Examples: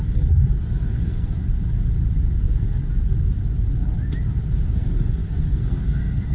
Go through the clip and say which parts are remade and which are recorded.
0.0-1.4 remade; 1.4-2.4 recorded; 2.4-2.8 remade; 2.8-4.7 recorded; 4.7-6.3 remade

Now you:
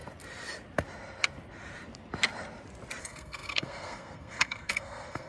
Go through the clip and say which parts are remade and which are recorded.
0.0-3.0 recorded; 3.0-5.3 remade